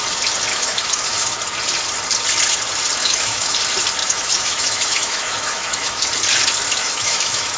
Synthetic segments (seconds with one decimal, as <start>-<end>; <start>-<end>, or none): 0.5-1.3; 3.0-3.6; 4.0-6.1; 6.8-7.6